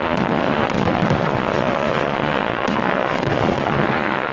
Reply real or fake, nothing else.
fake